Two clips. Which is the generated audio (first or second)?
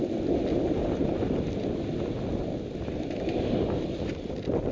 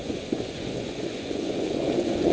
second